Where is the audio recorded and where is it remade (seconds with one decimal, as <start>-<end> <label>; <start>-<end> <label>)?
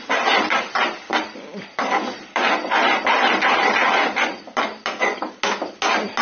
0.0-1.1 recorded; 1.1-4.3 remade; 4.3-6.2 recorded